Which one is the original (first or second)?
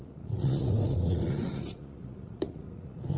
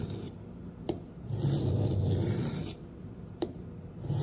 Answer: second